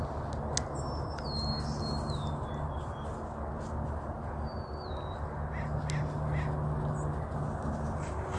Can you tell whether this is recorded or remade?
recorded